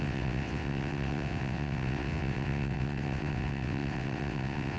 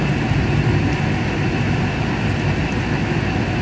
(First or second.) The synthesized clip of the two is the first